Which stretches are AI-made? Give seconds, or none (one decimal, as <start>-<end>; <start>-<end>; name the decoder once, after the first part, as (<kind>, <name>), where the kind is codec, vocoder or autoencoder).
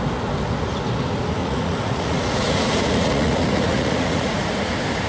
1.4-4.5 (vocoder, Vocos)